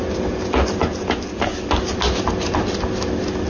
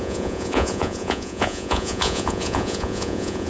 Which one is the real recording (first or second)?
first